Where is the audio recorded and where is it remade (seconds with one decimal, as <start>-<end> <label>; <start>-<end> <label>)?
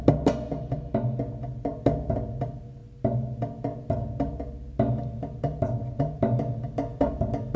0.0-7.6 recorded